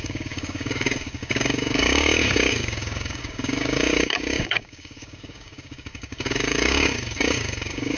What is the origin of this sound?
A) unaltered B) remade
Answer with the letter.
B